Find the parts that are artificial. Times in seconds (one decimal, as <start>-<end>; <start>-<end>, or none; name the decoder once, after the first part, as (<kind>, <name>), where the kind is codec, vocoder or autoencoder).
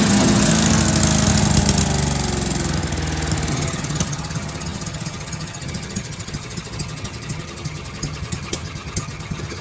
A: 0.0-0.5 (vocoder, HiFi-GAN); 3.5-9.6